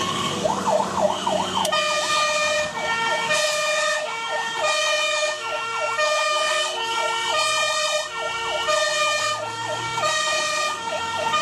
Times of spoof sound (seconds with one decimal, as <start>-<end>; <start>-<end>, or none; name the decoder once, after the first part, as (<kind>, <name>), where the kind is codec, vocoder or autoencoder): 0.0-1.6 (codec, DAC); 2.1-7.0; 9.2-11.4